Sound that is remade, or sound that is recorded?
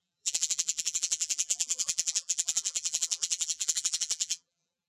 remade